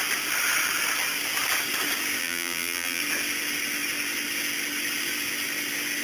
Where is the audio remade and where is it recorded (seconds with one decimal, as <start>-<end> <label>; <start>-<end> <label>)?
0.0-2.2 recorded; 2.2-3.0 remade; 3.0-6.0 recorded